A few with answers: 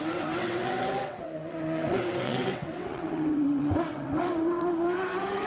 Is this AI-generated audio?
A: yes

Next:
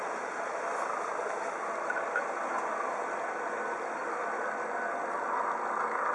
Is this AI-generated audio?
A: no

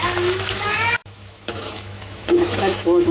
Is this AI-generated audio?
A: yes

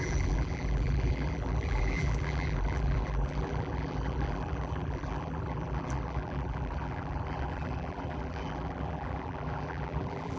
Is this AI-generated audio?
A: yes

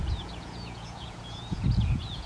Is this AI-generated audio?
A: yes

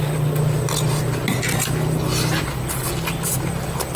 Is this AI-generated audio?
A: no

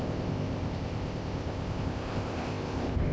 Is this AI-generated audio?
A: yes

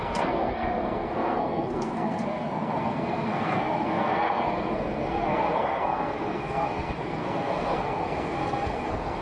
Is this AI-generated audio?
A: yes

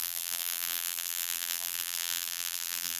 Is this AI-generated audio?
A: yes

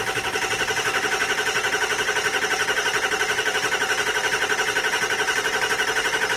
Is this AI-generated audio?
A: no